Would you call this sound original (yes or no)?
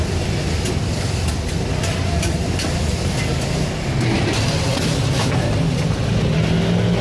yes